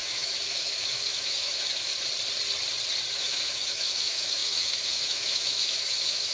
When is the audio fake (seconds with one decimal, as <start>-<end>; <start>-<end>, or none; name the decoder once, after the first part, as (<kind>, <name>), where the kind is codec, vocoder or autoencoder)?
0.0-1.9 (autoencoder, DAC-VAE); 3.1-6.3